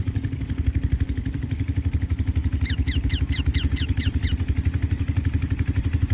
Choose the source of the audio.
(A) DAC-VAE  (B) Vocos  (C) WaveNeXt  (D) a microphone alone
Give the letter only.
D